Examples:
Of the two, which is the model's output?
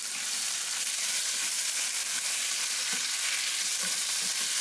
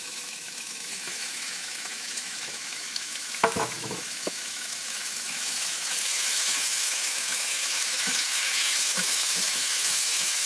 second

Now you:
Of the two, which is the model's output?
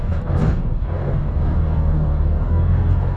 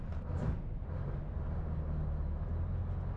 first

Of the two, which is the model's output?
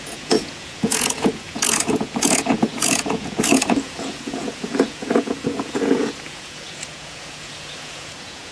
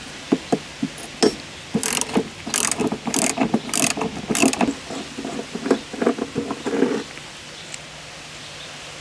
first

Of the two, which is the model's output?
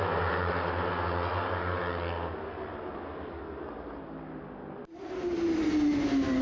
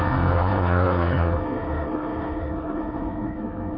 second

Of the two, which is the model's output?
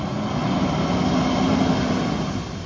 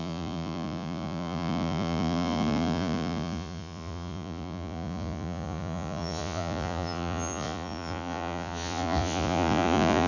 second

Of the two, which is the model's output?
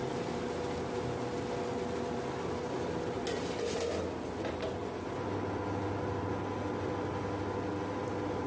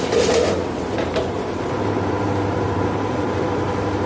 second